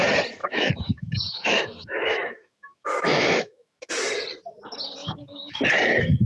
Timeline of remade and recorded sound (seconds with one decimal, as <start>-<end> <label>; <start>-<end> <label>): 0.0-0.4 recorded; 0.4-3.9 remade; 3.9-5.0 recorded; 5.0-5.6 remade; 5.6-6.3 recorded